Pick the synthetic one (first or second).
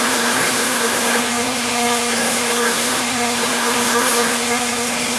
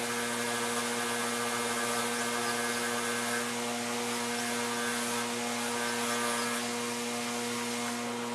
first